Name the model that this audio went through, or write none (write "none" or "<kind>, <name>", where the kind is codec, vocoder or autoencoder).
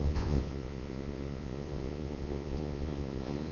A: vocoder, Vocos